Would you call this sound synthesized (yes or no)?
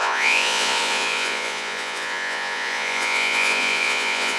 yes